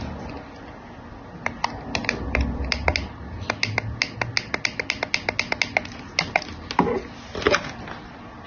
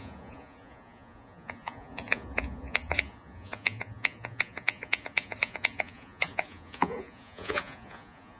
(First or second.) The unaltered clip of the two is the first